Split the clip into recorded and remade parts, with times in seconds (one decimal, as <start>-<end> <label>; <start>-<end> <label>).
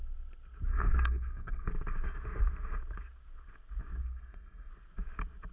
0.0-0.7 recorded; 0.7-1.7 remade; 1.7-4.0 recorded; 4.0-4.7 remade; 4.7-5.5 recorded